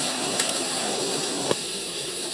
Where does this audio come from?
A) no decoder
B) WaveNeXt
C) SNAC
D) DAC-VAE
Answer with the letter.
C